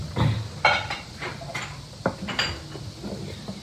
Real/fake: real